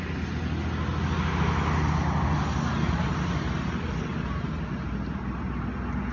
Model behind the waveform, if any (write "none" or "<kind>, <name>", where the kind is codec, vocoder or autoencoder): none